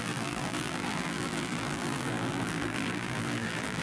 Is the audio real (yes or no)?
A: no